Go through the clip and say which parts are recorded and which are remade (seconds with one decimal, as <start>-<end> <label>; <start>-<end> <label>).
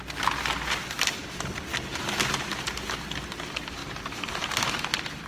0.0-3.8 recorded; 3.8-5.3 remade